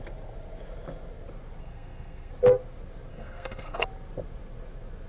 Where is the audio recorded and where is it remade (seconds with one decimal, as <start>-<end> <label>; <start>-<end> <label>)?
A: 0.0-1.6 recorded; 1.6-2.3 remade; 2.3-3.1 recorded; 3.1-3.8 remade; 3.8-5.1 recorded